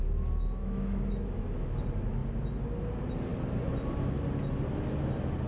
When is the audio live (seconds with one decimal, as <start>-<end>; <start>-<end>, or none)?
0.0-0.6; 1.8-5.5